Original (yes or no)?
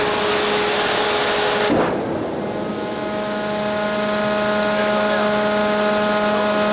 yes